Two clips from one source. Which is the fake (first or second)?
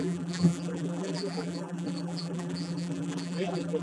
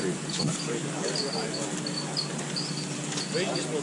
first